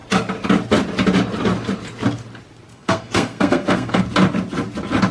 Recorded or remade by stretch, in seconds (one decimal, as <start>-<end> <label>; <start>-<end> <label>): 0.0-2.7 recorded; 2.7-4.0 remade; 4.0-5.1 recorded